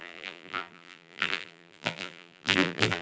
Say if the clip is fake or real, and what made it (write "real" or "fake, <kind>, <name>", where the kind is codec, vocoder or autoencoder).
fake, vocoder, BigVGAN v2